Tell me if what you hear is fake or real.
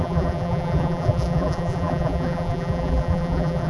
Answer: fake